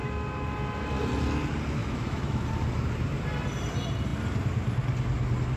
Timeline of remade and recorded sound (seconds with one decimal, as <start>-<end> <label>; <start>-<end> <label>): 0.0-1.8 recorded; 1.8-2.5 remade; 2.5-5.6 recorded